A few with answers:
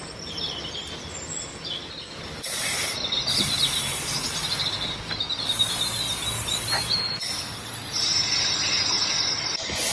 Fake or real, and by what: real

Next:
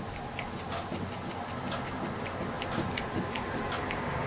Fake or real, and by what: real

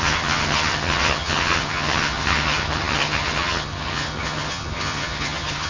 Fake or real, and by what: fake, vocoder, HiFi-GAN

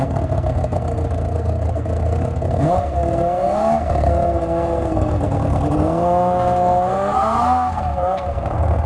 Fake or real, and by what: fake, codec, SNAC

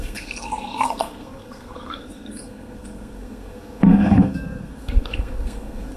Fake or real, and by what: fake, codec, SNAC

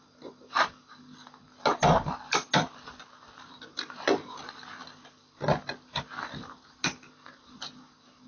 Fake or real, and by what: real